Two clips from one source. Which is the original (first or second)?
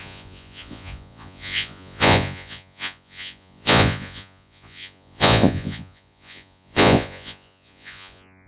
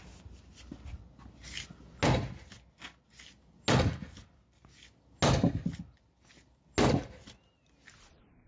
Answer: second